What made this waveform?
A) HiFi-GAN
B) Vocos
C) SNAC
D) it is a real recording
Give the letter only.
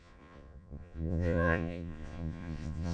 B